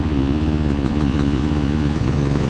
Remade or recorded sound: remade